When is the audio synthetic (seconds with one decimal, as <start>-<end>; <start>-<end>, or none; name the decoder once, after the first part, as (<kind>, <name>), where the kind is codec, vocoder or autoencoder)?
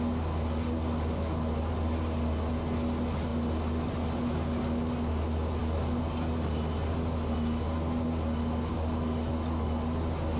none